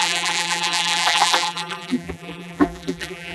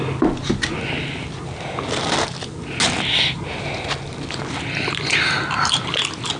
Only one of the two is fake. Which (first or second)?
first